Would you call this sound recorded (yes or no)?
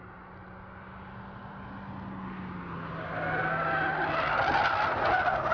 yes